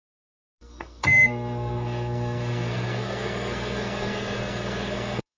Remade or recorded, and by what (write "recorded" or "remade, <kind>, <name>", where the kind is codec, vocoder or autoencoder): remade, codec, SNAC